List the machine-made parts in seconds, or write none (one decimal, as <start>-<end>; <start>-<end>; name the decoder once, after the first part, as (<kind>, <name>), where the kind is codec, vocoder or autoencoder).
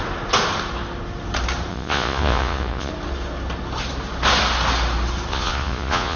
1.7-2.9 (vocoder, Vocos); 5.3-6.2